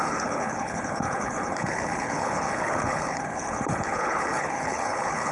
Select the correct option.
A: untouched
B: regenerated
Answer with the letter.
B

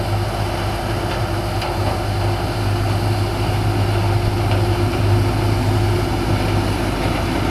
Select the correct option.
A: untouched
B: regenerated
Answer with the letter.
A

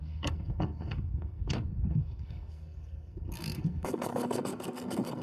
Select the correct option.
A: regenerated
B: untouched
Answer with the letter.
A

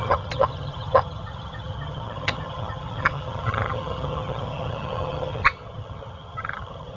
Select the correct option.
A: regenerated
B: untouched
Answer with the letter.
A